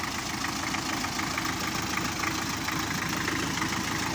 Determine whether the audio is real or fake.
real